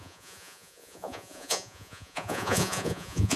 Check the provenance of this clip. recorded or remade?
remade